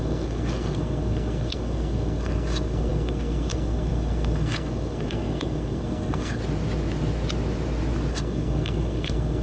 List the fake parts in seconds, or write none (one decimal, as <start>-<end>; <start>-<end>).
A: 0.0-6.4; 8.1-9.4